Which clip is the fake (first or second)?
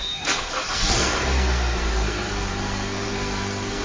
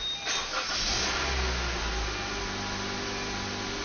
first